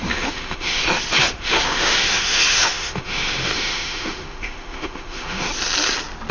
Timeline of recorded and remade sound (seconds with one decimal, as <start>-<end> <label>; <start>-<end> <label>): 0.0-0.8 remade; 0.8-1.4 recorded; 1.4-5.5 remade; 5.5-6.3 recorded